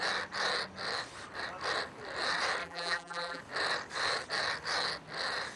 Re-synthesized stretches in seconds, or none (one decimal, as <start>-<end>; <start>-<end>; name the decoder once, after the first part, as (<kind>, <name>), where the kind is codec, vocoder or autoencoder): 2.6-3.4 (vocoder, BigVGAN v2)